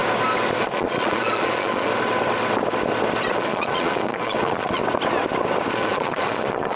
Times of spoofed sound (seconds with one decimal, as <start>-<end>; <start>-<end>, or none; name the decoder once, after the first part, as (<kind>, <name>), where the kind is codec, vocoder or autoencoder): 0.6-1.9 (vocoder, Vocos); 3.4-4.8; 5.7-6.8